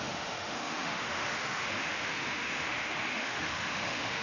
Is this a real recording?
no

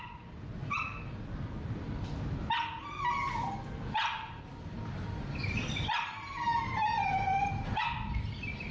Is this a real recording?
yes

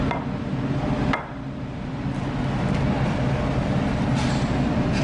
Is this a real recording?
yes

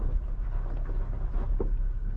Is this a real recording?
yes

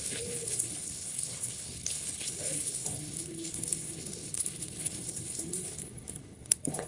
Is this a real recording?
no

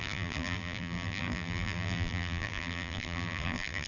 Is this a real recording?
no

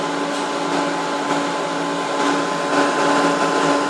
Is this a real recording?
yes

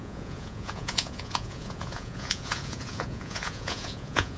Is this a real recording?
no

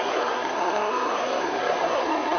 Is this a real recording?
no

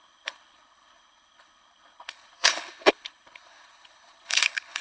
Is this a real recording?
no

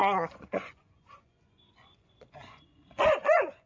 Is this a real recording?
no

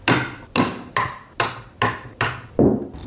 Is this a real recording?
yes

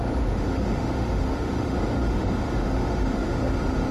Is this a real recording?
no